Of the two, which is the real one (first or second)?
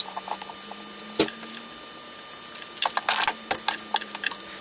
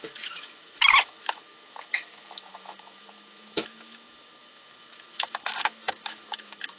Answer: first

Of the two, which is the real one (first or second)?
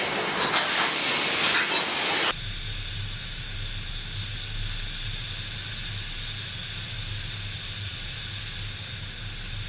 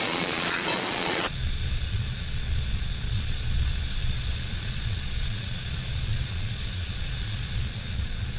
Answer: first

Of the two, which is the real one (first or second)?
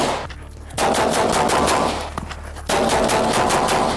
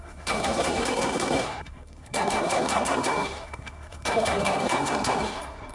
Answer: first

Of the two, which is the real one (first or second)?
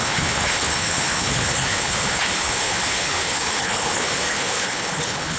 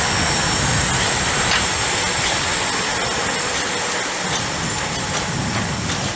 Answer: second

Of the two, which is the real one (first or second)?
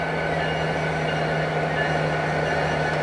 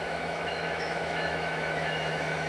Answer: first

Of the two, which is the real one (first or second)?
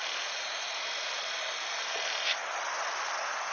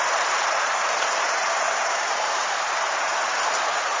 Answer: first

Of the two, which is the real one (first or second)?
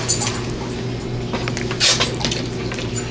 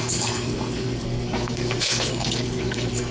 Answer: first